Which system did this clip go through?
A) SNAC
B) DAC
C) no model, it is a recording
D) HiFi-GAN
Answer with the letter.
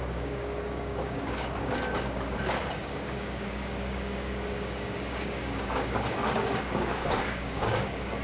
B